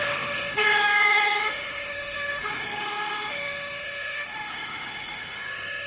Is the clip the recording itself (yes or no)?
no